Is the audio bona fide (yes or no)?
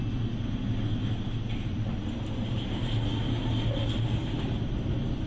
yes